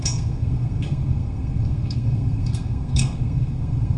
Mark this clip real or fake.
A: fake